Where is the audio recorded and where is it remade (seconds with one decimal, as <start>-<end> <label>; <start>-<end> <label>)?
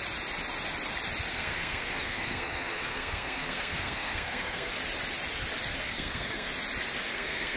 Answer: 0.0-1.3 recorded; 1.3-4.7 remade; 4.7-5.8 recorded; 5.8-6.5 remade; 6.5-7.1 recorded; 7.1-7.6 remade